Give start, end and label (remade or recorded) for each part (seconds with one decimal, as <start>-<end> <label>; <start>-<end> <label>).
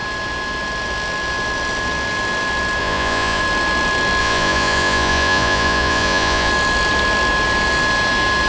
0.0-2.8 recorded; 2.8-3.4 remade; 3.4-4.2 recorded; 4.2-6.5 remade; 6.5-8.5 recorded